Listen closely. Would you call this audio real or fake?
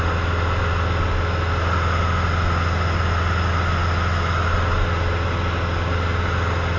real